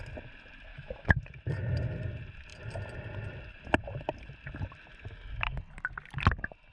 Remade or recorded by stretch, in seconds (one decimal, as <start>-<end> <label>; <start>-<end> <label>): 0.0-0.7 recorded; 0.7-1.2 remade; 1.2-6.7 recorded